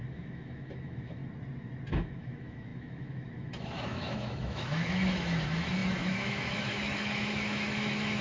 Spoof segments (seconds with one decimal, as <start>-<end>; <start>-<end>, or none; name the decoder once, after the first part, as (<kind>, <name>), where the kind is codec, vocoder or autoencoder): 0.0-1.2 (autoencoder, DAC-VAE); 1.9-8.2